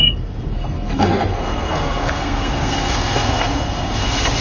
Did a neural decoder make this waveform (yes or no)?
yes